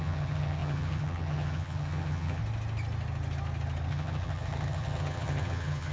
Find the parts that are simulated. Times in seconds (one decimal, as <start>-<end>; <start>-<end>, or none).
0.0-2.4; 3.9-5.9